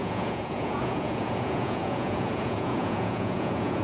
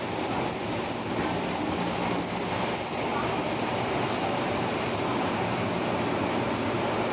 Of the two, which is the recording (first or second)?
second